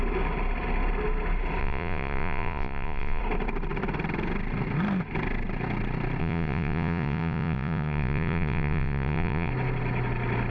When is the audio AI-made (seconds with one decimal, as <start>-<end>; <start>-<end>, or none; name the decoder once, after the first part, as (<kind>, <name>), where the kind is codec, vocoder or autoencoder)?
1.6-3.2 (vocoder, Vocos); 6.2-9.5